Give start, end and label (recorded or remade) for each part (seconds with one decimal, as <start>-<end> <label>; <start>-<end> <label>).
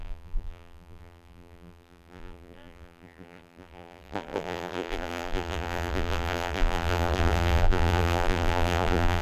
0.0-9.2 remade